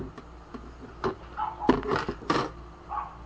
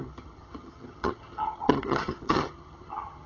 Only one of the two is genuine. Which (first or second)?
first